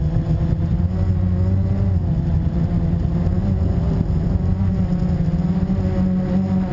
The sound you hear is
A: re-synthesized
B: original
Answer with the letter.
B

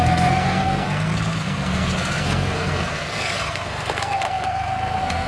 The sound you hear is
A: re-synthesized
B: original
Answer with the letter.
A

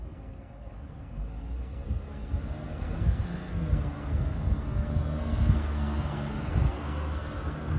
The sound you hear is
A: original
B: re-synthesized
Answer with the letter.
B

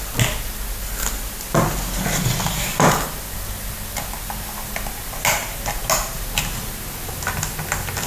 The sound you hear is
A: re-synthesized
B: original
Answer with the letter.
B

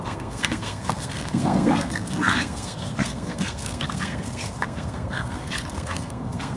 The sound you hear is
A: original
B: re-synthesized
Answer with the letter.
B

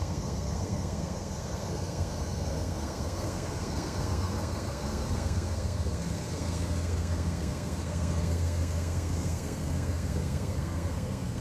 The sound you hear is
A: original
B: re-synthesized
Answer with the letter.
B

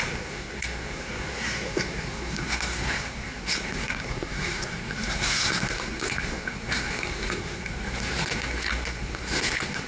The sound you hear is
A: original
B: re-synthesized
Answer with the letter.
B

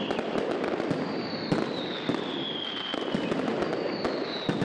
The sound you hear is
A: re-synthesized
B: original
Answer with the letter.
B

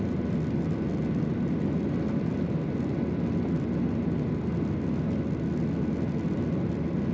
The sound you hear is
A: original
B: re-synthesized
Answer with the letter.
A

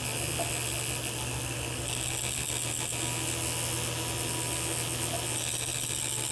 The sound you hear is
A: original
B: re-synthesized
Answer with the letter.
A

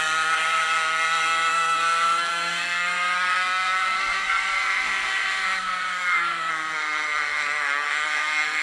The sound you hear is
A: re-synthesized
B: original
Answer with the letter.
A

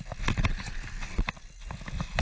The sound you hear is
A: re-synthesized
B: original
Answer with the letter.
B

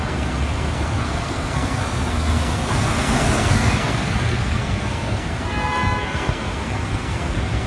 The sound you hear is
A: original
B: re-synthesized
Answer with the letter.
B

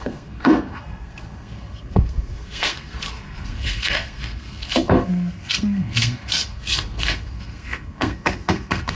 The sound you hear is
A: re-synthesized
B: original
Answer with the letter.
A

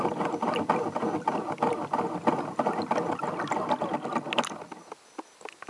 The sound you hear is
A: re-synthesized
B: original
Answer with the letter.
B